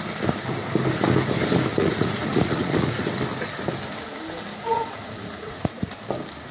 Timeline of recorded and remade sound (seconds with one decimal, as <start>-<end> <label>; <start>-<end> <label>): 0.0-1.7 recorded; 1.7-3.1 remade; 3.1-4.6 recorded; 4.6-5.9 remade; 5.9-6.5 recorded